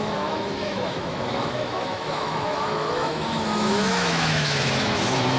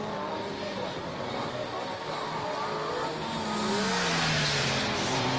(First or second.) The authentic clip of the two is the second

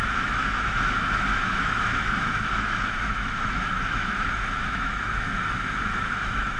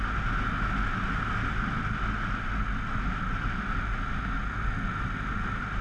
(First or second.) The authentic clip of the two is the second